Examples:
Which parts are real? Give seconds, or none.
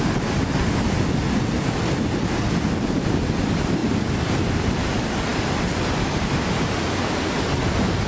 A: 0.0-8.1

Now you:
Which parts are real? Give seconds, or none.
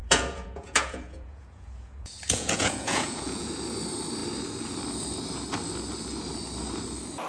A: 3.5-7.3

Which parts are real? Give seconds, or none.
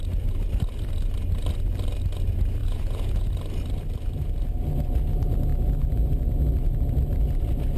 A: 0.0-2.6; 3.3-7.8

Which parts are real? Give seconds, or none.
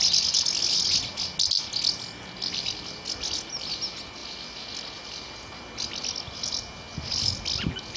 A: 0.0-8.0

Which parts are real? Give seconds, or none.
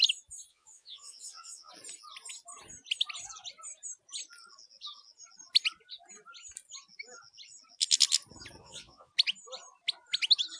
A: 0.0-0.5; 1.7-8.6; 9.1-10.6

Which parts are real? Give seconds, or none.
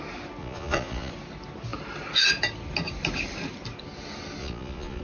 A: 0.0-0.4; 1.1-4.4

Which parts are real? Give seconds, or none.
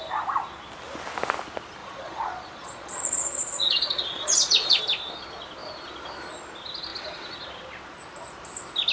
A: 0.0-1.8; 4.8-8.9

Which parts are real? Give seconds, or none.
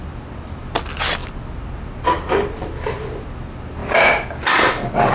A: 0.0-5.1